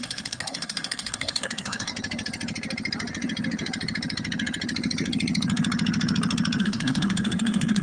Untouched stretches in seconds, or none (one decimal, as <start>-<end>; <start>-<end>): 1.9-6.6